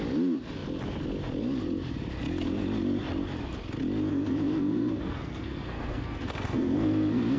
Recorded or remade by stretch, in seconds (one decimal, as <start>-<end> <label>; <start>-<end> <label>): 0.0-4.1 recorded; 4.1-7.4 remade